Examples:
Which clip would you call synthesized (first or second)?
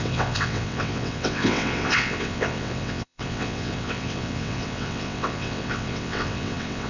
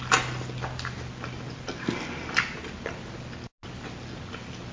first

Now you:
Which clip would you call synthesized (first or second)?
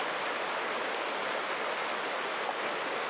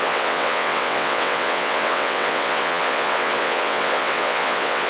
second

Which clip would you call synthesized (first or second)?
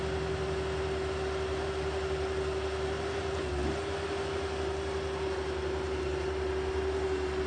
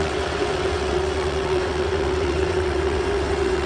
second